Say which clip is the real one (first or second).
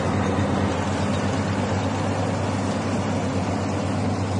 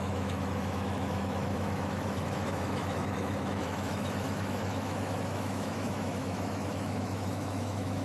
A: first